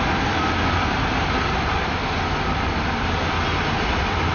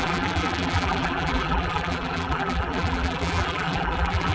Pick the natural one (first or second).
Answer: first